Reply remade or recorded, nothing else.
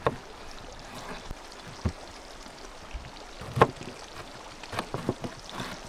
recorded